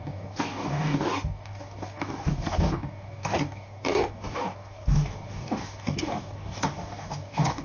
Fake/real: fake